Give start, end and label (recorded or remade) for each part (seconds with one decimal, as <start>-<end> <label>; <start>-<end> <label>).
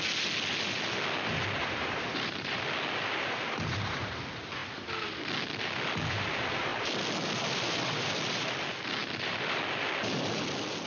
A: 0.0-1.6 recorded; 1.6-2.6 remade; 2.6-9.0 recorded; 9.0-9.6 remade; 9.6-10.9 recorded